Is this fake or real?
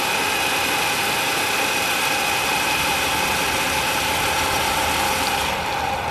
real